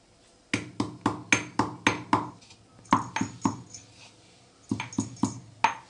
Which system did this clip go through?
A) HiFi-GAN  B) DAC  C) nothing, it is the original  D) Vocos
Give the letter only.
C